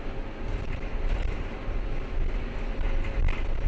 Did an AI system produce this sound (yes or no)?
no